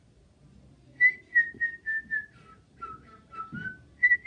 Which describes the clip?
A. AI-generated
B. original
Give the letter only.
B